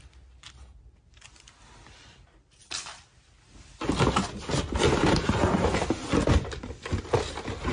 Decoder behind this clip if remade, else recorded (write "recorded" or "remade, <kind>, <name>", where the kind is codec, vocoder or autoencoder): recorded